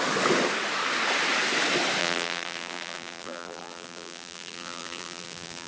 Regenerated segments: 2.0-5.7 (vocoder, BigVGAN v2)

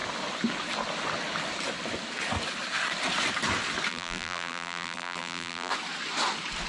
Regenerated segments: 3.9-5.7 (vocoder, BigVGAN v2)